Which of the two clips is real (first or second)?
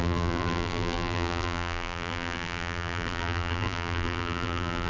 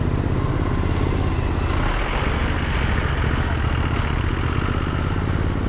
second